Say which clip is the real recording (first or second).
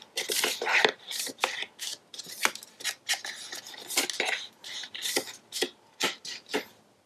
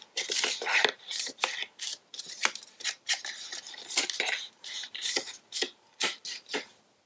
first